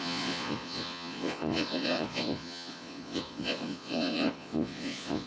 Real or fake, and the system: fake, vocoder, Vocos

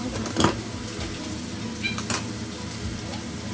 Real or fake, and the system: real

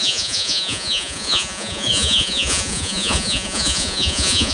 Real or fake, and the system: fake, vocoder, Vocos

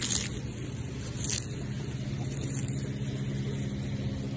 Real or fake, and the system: real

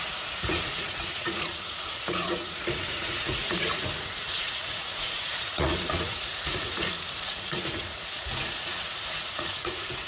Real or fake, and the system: fake, vocoder, Vocos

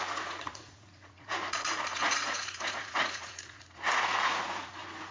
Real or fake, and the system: fake, vocoder, Vocos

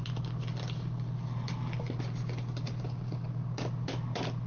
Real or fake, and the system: real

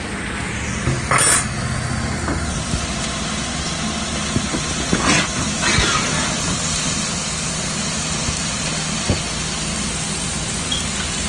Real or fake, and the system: real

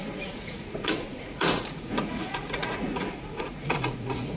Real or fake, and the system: fake, vocoder, Vocos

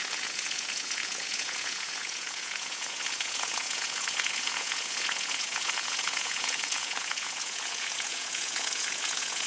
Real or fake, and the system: fake, vocoder, Vocos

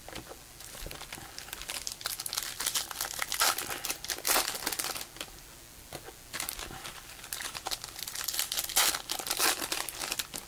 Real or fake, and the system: real